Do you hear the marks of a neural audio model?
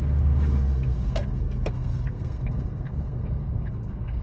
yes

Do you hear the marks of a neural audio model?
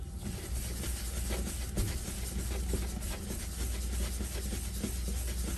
no